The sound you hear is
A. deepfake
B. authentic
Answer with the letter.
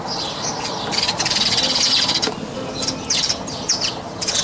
B